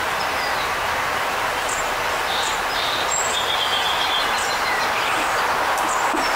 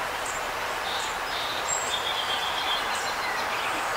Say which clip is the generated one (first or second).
second